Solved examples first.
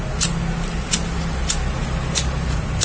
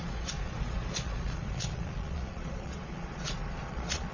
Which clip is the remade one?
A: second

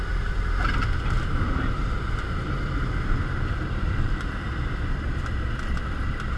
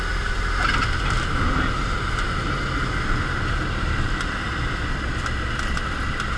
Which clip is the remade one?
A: first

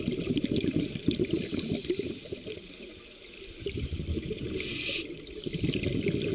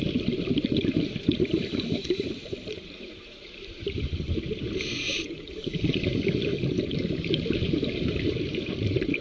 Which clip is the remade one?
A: second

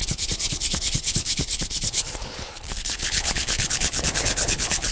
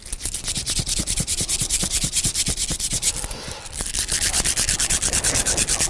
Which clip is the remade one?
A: first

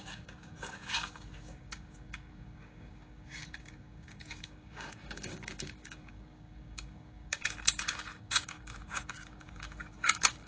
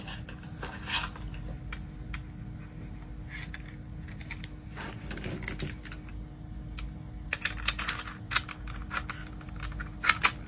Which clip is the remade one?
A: first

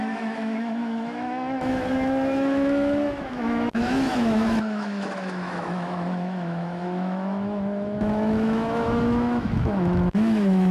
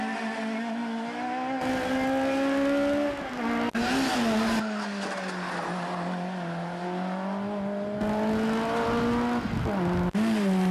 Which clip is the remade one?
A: first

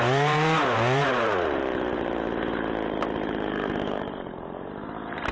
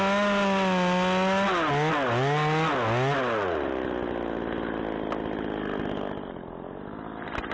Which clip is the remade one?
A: first